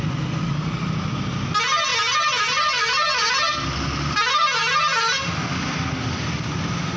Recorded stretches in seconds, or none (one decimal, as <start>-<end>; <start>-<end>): 0.0-7.0